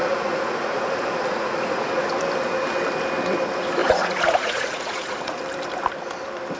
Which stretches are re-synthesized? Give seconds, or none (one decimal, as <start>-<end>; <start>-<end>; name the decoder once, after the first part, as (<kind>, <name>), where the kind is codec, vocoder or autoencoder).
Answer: 0.0-0.9 (vocoder, Vocos); 1.3-2.1; 3.8-5.4